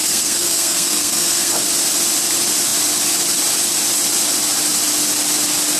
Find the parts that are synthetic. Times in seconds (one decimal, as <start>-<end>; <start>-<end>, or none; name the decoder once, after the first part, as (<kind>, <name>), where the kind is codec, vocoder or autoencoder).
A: 0.0-1.7 (codec, SNAC)